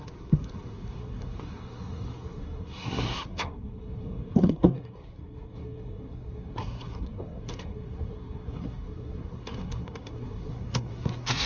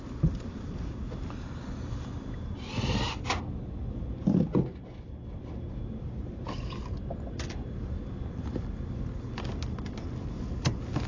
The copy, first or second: first